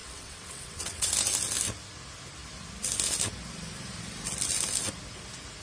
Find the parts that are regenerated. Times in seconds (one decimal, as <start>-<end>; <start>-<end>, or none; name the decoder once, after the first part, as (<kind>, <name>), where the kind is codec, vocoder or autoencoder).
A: 0.0-1.1 (vocoder, WaveNeXt)